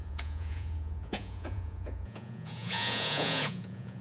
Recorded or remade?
remade